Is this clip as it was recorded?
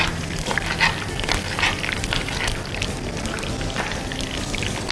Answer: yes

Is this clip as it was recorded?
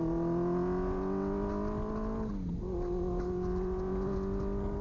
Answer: yes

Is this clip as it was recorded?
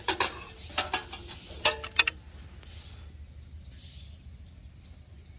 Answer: yes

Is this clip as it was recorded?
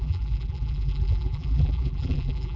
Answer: no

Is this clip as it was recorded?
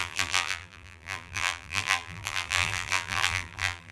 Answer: no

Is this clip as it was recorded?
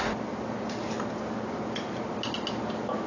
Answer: yes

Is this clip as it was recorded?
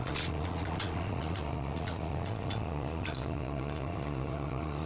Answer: no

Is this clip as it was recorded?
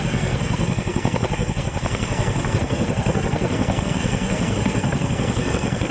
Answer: no